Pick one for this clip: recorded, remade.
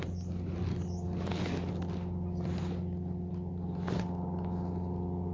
recorded